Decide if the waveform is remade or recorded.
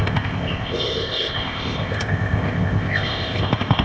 remade